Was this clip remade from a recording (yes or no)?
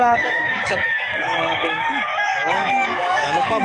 yes